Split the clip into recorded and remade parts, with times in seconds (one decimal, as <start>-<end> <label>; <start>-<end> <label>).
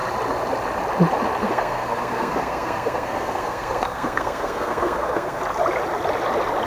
0.0-1.4 recorded; 1.4-5.4 remade; 5.4-6.7 recorded